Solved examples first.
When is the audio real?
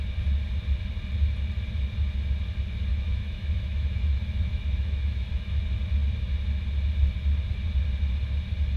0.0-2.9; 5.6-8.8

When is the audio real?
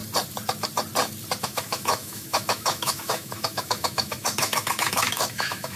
0.0-1.4